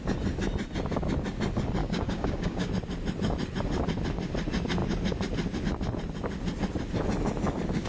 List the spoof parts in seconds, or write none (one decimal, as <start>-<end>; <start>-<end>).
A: 1.8-2.7

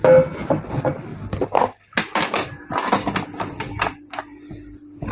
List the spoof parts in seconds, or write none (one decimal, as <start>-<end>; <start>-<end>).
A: none